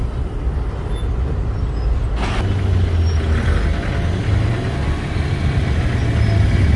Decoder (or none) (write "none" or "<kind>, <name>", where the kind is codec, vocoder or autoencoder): none